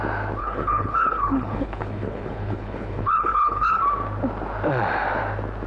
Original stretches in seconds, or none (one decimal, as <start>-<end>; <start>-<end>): 0.0-0.4; 3.8-5.7